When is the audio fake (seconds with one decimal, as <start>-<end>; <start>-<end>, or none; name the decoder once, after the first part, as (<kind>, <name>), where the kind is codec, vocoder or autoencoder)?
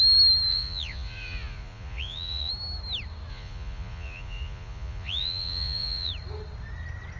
0.5-2.5 (vocoder, Vocos); 3.3-6.1